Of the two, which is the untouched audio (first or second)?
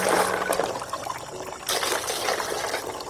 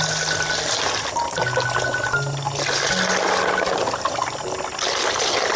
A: second